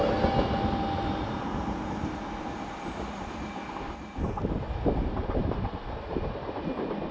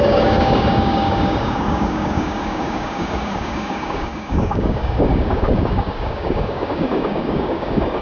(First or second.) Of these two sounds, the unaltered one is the first